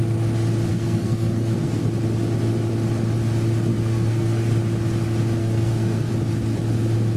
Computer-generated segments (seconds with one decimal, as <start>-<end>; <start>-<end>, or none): 0.7-1.8; 3.7-4.4; 5.4-6.1

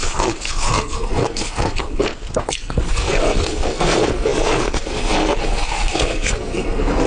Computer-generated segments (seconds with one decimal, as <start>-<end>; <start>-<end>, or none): 0.0-7.1

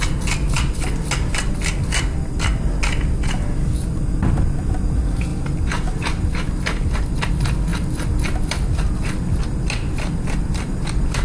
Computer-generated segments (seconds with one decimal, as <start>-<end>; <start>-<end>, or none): none

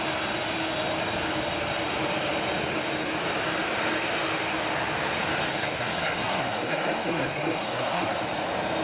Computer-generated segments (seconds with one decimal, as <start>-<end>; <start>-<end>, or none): 5.5-8.2

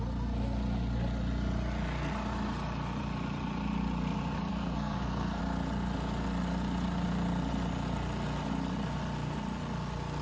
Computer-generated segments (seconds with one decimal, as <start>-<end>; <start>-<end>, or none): 4.5-5.4

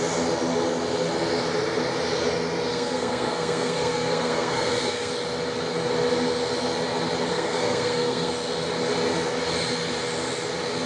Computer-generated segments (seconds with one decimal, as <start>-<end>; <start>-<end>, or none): 2.7-5.1; 7.3-8.3